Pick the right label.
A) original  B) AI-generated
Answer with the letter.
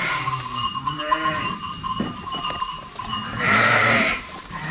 B